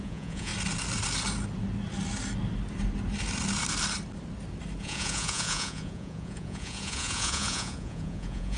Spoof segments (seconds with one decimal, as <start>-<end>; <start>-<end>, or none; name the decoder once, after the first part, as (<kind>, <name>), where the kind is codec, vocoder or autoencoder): 0.0-0.5 (vocoder, Vocos); 4.8-8.6